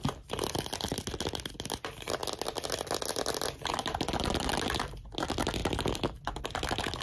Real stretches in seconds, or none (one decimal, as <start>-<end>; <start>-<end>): 0.0-7.0